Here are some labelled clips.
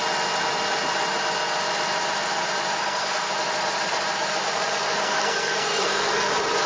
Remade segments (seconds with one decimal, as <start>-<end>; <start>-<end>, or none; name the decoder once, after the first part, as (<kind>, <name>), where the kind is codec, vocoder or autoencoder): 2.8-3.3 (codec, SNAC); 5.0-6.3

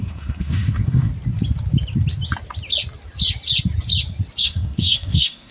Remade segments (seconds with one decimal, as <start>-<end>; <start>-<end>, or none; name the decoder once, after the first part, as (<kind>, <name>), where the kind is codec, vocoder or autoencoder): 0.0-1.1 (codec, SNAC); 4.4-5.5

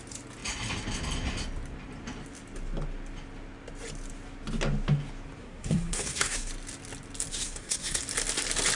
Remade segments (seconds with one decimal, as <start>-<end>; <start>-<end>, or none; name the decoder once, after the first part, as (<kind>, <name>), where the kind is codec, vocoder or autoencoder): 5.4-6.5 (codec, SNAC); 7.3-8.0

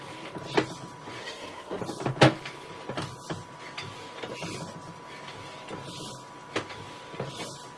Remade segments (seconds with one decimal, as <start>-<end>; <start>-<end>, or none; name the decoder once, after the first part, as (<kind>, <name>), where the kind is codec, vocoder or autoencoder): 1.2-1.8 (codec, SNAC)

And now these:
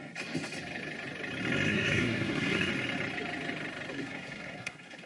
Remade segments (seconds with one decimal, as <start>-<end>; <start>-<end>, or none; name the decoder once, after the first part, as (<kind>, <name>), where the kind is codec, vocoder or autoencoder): 1.7-2.7 (codec, SNAC); 3.9-5.1

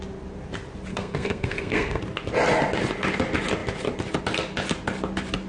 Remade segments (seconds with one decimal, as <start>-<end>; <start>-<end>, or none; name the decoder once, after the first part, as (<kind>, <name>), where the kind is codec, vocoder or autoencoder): 0.9-2.0 (codec, SNAC)

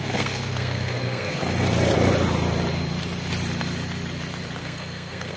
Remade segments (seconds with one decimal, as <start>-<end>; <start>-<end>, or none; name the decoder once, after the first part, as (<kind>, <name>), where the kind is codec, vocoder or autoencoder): 0.0-1.4 (codec, SNAC); 4.6-5.4

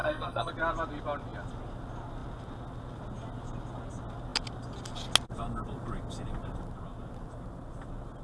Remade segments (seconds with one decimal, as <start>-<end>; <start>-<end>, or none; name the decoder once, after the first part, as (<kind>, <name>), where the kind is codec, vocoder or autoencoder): 0.0-0.5 (codec, SNAC)